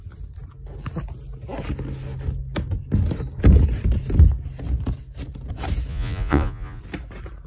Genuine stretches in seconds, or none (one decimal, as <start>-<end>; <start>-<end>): 0.0-5.9; 6.8-7.5